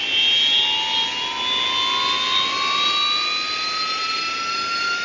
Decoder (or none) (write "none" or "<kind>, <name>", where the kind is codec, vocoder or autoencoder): none